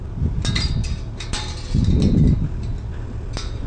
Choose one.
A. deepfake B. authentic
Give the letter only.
B